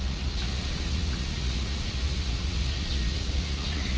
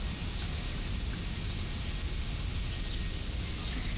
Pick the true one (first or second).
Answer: second